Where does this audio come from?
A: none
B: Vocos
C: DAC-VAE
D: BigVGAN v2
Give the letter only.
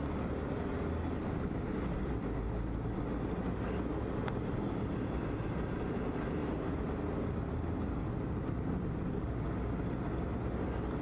A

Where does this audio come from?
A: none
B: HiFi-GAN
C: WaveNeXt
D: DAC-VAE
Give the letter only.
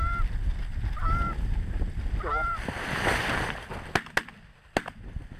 A